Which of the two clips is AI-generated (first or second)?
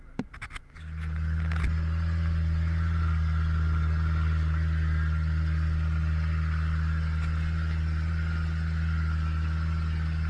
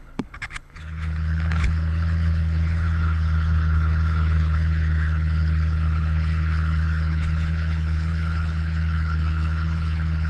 second